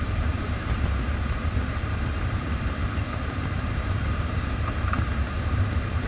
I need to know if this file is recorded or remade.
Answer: remade